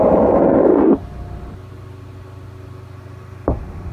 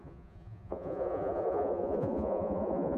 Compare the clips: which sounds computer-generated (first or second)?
second